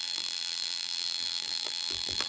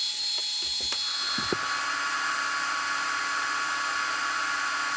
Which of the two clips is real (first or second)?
second